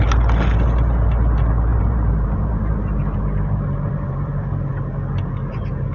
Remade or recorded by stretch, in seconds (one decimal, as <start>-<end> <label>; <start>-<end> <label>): 0.0-1.7 recorded; 1.7-4.7 remade; 4.7-5.9 recorded

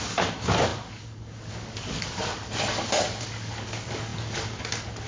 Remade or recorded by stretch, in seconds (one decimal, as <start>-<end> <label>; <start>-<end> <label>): 0.0-2.4 remade; 2.4-3.2 recorded; 3.2-5.1 remade

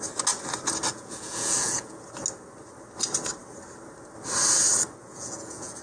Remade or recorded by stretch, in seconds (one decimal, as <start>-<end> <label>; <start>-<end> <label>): 0.0-0.9 recorded; 0.9-2.0 remade; 2.0-5.0 recorded; 5.0-5.8 remade

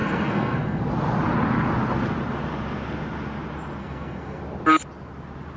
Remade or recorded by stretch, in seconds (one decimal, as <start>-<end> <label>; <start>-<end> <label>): 0.0-0.8 remade; 0.8-3.8 recorded; 3.8-4.4 remade; 4.4-5.6 recorded